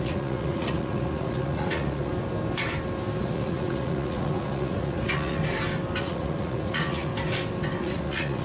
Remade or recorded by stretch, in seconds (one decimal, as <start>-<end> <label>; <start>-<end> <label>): 0.0-2.1 remade; 2.1-3.2 recorded; 3.2-5.4 remade; 5.4-6.0 recorded; 6.0-7.1 remade; 7.1-7.8 recorded; 7.8-8.4 remade